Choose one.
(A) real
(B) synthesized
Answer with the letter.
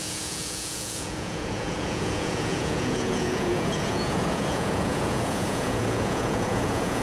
B